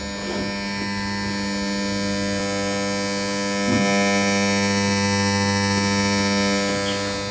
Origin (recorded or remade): recorded